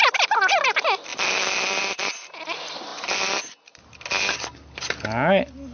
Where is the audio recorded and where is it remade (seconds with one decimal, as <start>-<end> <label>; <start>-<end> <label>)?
0.0-5.7 recorded